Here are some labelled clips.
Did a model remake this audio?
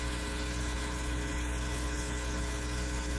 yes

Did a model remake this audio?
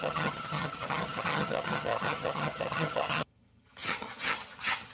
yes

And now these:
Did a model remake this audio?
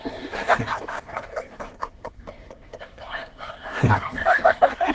yes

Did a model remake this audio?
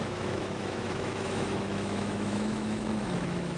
yes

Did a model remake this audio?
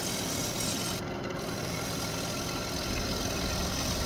no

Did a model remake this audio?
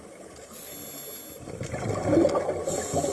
no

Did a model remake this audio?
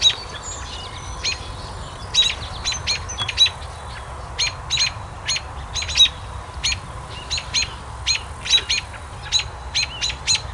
no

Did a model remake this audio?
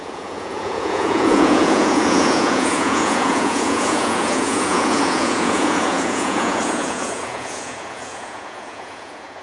yes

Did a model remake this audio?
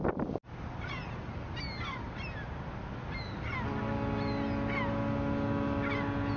no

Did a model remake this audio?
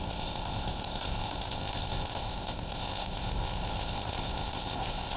yes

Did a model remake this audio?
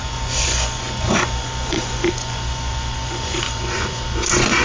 yes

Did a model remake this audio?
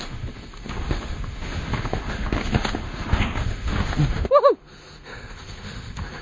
yes